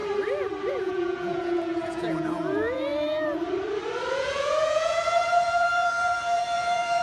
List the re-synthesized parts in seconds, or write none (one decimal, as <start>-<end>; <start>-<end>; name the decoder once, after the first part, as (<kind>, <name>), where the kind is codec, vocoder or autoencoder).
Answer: 0.7-2.9 (vocoder, Vocos); 4.1-7.0